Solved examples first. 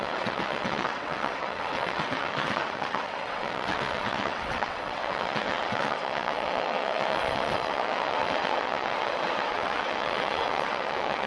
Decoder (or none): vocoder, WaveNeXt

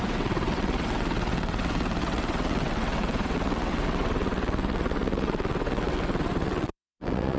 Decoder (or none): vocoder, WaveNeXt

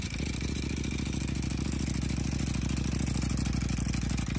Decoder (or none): none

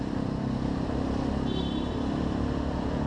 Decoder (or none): none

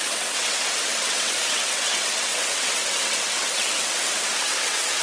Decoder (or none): vocoder, WaveNeXt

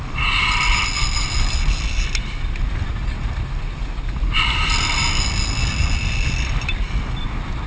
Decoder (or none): none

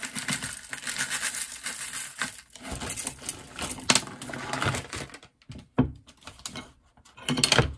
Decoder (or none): none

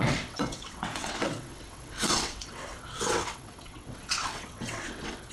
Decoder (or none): vocoder, WaveNeXt